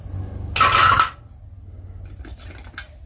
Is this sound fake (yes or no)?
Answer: no